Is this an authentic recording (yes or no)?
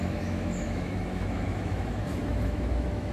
no